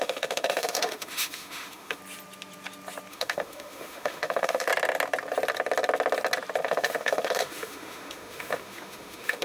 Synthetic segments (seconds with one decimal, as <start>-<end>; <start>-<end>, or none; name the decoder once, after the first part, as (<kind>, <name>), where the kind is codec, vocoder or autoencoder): 0.0-2.0 (autoencoder, DAC-VAE); 3.1-4.7; 6.6-9.4